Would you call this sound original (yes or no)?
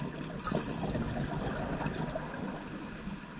yes